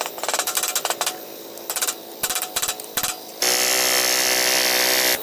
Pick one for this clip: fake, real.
real